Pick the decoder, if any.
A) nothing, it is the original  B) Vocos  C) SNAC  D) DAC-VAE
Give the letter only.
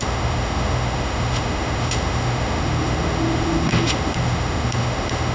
D